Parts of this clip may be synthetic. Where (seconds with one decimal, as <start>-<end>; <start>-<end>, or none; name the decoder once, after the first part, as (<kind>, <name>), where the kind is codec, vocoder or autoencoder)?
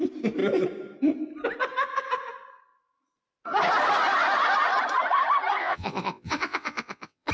5.6-7.3 (vocoder, WaveNeXt)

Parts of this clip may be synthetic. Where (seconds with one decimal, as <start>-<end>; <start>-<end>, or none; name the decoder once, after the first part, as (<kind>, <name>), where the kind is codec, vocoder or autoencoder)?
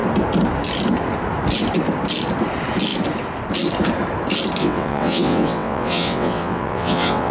4.6-7.3 (vocoder, WaveNeXt)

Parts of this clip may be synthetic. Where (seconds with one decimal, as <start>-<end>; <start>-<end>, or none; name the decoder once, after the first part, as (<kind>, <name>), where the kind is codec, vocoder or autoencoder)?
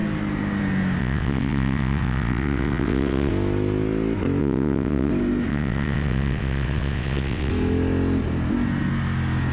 1.0-3.3 (vocoder, WaveNeXt); 4.4-5.1; 5.5-7.5